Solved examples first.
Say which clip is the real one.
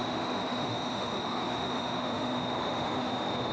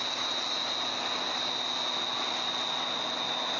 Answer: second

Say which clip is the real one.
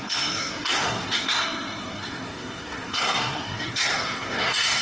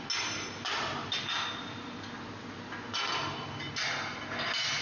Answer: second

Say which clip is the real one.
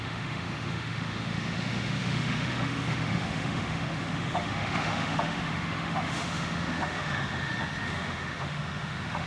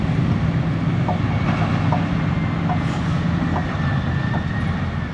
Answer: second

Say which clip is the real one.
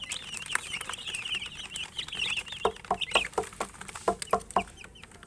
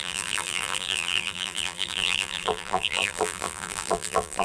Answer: first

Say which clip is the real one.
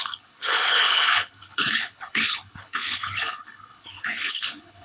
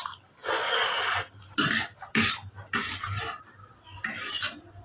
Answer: second